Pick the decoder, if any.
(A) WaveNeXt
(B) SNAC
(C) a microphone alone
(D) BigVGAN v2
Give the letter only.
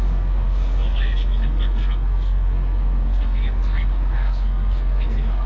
B